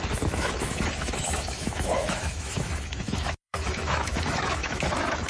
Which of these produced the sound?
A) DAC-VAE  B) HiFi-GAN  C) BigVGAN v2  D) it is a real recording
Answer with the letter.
A